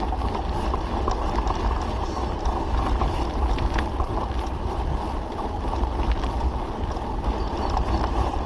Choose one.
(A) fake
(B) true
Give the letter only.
B